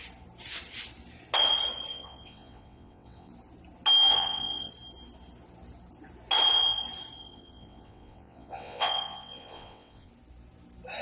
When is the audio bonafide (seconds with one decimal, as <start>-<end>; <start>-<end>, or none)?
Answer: 0.0-1.9; 3.3-4.1; 4.7-7.2; 10.1-11.0